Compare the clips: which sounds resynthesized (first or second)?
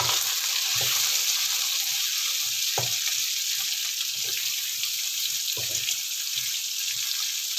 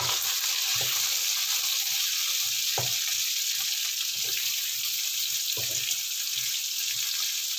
first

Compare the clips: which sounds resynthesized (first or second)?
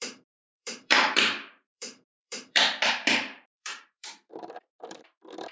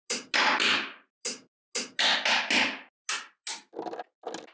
first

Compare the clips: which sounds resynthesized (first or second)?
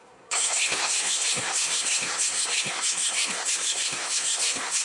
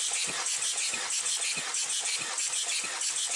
first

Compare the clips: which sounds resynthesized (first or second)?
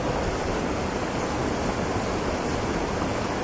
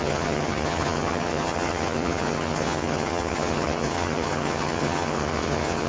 second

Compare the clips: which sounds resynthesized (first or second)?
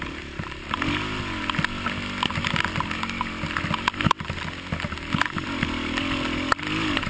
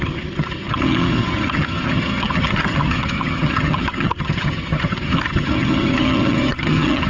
second